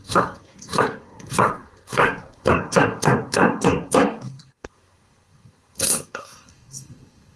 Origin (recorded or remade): remade